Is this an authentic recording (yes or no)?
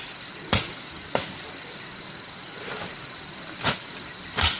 yes